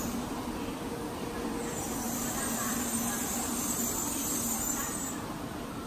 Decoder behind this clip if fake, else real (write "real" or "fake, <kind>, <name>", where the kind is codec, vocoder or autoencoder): fake, vocoder, BigVGAN v2